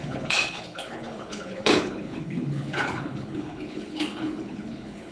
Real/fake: fake